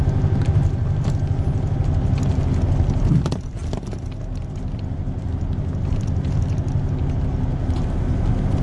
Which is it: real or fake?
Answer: real